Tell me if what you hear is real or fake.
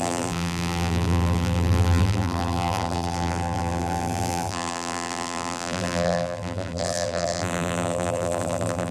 fake